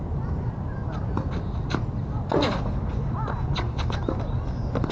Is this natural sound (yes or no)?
yes